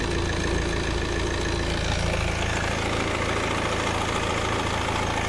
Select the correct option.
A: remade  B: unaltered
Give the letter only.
B